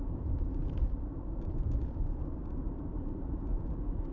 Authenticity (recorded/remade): remade